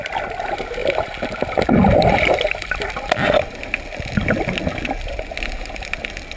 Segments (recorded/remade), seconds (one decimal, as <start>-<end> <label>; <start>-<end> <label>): 0.0-6.4 recorded